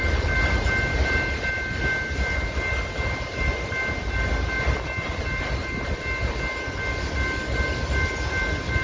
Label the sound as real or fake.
real